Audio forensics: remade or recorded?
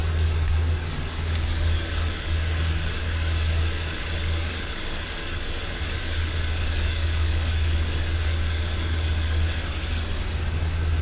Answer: remade